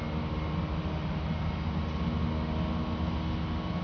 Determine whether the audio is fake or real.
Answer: real